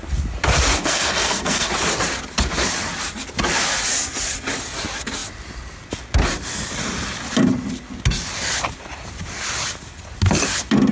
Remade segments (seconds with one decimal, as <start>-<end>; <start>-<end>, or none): 0.8-1.7